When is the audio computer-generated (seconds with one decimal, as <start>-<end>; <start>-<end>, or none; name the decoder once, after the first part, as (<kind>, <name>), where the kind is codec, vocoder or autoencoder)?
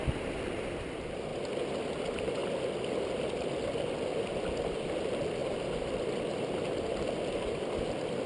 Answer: none